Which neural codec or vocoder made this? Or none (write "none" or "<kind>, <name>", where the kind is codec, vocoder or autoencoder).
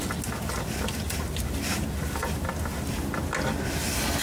none